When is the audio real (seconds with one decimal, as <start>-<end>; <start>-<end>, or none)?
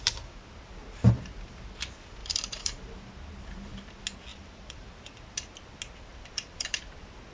0.0-2.2; 3.0-4.3; 4.9-6.1; 6.8-7.3